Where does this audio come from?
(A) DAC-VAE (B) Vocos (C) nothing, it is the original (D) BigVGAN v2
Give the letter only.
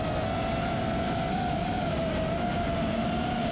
C